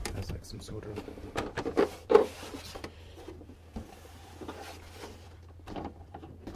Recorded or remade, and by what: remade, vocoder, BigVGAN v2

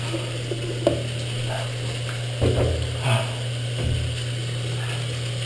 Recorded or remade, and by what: recorded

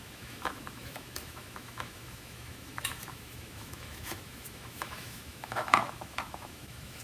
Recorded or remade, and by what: remade, autoencoder, DAC-VAE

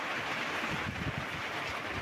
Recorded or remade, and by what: remade, vocoder, BigVGAN v2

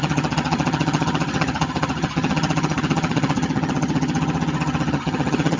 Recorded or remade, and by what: remade, vocoder, HiFi-GAN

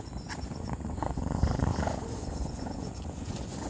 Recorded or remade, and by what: remade, vocoder, Vocos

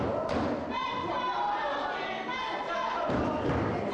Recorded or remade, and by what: recorded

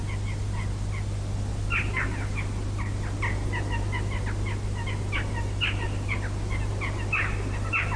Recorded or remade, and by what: recorded